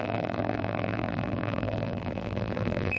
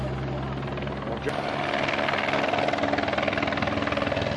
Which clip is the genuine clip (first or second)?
second